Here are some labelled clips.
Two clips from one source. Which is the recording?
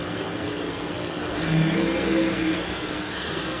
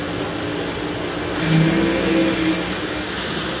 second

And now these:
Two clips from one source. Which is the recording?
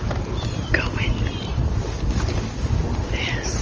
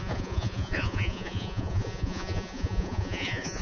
first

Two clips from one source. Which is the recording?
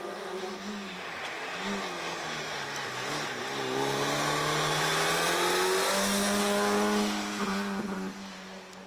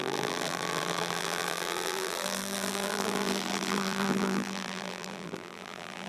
first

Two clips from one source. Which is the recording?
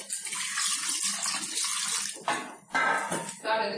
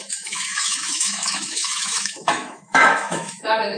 first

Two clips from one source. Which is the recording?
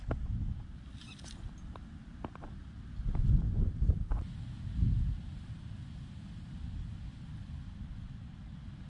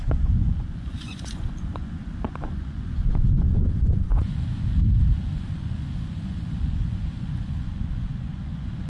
first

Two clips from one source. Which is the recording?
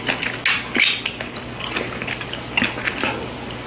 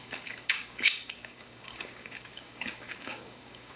first